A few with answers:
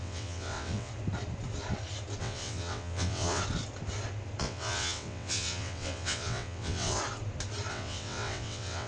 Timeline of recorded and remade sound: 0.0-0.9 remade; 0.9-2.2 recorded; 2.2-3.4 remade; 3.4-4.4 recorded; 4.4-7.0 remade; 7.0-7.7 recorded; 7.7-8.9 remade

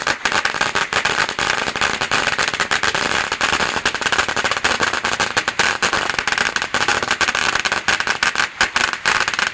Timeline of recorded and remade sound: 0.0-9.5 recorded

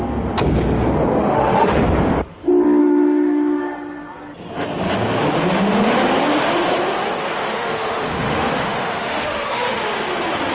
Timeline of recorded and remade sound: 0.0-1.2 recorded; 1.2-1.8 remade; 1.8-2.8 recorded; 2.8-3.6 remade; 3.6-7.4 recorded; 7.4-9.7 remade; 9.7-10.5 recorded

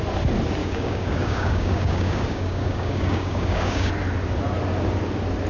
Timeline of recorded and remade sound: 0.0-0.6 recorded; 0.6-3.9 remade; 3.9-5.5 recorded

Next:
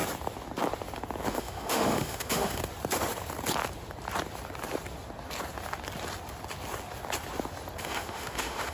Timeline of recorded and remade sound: 0.0-1.3 recorded; 1.3-2.6 remade; 2.6-7.8 recorded; 7.8-8.7 remade

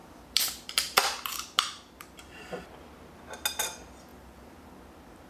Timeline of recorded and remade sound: 0.0-2.5 remade; 2.5-4.1 recorded; 4.1-4.7 remade; 4.7-5.3 recorded

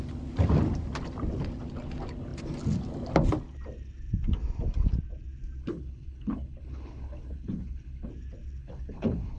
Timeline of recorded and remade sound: 0.0-5.6 recorded; 5.6-8.1 remade; 8.1-8.6 recorded; 8.6-9.4 remade

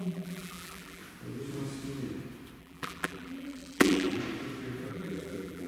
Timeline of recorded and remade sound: 0.0-1.0 remade; 1.0-2.6 recorded; 2.6-4.2 remade; 4.2-4.9 recorded; 4.9-5.7 remade